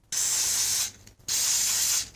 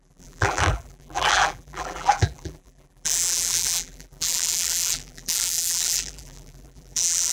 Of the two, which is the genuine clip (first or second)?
first